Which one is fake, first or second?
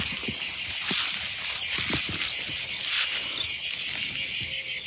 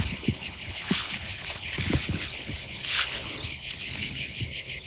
second